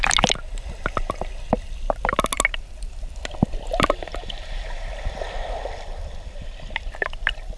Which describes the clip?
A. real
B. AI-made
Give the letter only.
A